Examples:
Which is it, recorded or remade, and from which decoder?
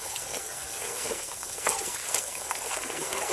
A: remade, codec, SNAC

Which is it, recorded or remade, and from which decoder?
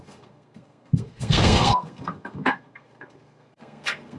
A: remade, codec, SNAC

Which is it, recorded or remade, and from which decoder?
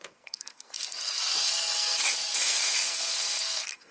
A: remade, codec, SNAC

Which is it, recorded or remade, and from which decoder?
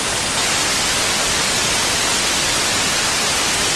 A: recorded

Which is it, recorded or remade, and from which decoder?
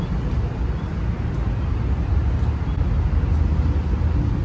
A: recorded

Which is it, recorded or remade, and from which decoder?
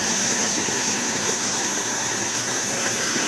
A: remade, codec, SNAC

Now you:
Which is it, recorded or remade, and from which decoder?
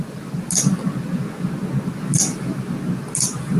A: recorded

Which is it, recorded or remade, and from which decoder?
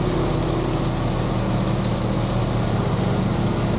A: recorded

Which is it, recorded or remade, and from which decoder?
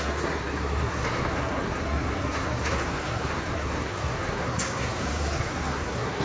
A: remade, codec, SNAC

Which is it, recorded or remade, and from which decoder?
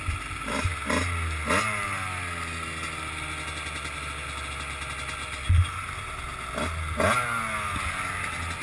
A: recorded